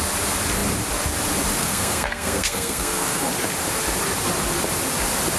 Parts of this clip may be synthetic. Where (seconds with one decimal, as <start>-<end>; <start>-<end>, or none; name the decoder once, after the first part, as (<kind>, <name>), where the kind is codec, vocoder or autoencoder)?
1.6-3.3 (codec, SNAC)